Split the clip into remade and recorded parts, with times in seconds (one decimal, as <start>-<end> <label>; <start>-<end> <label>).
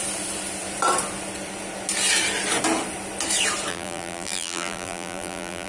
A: 0.0-3.7 recorded; 3.7-5.7 remade